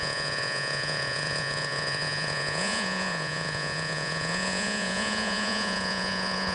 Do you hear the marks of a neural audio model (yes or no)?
yes